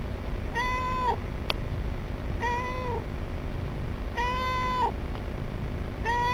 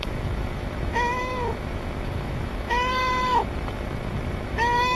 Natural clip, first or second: first